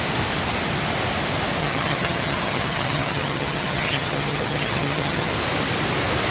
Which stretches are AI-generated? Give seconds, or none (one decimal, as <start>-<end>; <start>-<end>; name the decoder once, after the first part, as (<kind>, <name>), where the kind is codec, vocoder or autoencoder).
1.6-5.3 (vocoder, HiFi-GAN)